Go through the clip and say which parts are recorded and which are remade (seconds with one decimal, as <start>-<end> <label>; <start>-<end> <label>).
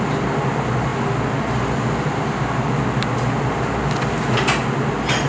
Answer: 0.0-5.3 recorded